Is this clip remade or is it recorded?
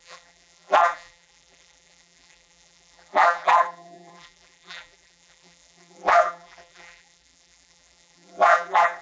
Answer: remade